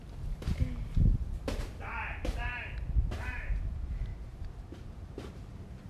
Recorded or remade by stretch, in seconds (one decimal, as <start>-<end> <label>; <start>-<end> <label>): 0.0-0.5 remade; 0.5-3.2 recorded; 3.2-5.9 remade